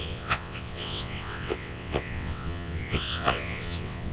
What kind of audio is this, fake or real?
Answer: fake